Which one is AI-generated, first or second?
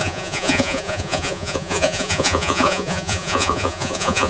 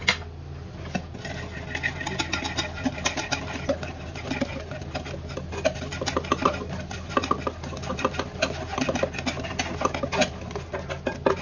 first